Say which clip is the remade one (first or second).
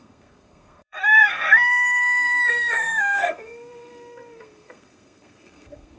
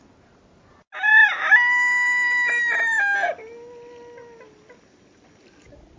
first